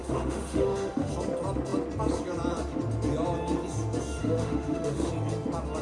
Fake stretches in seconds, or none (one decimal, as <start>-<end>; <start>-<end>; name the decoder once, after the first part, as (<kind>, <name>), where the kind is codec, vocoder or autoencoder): 0.0-1.1 (autoencoder, DAC-VAE); 4.2-5.1